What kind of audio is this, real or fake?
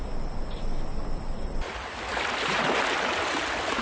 real